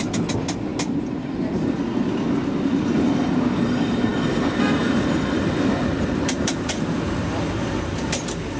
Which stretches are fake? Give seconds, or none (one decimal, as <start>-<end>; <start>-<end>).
0.7-1.3